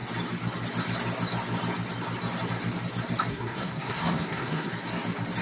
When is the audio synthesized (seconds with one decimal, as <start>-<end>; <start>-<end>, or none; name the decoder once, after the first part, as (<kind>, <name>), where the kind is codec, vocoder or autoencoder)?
3.3-4.7 (codec, SNAC)

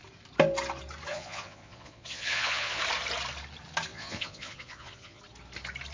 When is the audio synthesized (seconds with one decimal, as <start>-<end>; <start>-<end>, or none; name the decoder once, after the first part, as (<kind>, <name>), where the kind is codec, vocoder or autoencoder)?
1.1-2.8 (vocoder, Vocos); 3.9-5.2

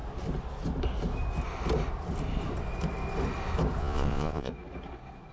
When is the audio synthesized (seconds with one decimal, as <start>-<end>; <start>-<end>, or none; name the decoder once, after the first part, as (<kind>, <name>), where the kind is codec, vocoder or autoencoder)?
3.8-4.5 (vocoder, Vocos)

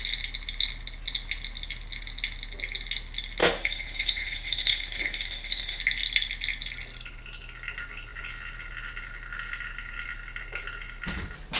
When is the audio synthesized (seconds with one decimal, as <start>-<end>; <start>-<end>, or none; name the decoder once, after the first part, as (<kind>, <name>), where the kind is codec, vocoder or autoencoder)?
3.4-5.8 (autoencoder, DAC-VAE)

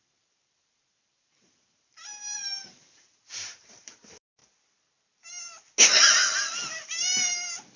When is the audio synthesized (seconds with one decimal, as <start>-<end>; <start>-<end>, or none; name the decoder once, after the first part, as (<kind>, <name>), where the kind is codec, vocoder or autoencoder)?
0.0-4.4 (vocoder, BigVGAN v2); 6.7-7.3

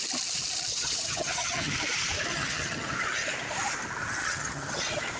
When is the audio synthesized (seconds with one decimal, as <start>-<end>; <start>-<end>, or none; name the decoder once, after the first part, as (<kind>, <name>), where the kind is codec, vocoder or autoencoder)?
0.7-1.7 (vocoder, HiFi-GAN); 2.3-2.9; 4.2-4.8